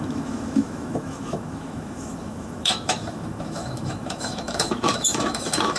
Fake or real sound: fake